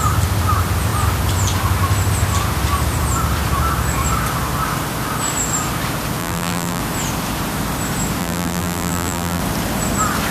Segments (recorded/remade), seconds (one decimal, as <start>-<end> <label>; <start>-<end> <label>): 0.0-6.2 recorded; 6.2-6.8 remade; 6.8-8.2 recorded; 8.2-9.4 remade; 9.4-10.3 recorded